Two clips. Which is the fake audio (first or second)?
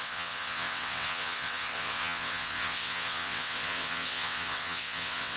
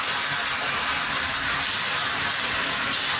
first